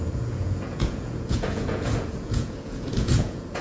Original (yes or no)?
no